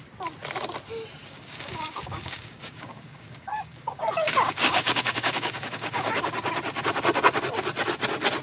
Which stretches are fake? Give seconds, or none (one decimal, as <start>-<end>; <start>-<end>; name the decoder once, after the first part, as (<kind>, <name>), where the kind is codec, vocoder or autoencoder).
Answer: 1.2-6.2 (codec, DAC)